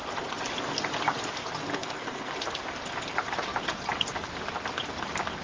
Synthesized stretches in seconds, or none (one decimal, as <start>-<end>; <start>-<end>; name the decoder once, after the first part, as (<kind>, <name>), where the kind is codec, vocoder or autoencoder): 1.7-2.3 (codec, SNAC)